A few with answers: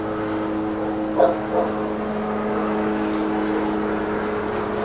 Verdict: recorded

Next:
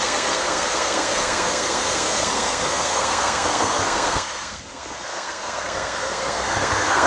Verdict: remade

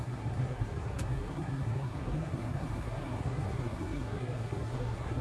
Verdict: remade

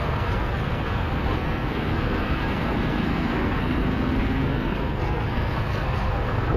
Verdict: remade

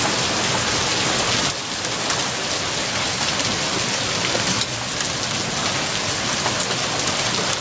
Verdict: recorded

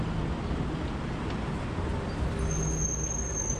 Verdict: recorded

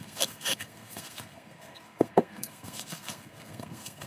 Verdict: remade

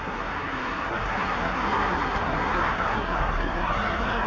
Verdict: remade